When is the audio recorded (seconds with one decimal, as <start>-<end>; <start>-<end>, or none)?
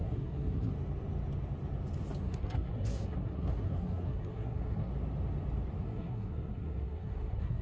0.7-2.2; 4.9-5.8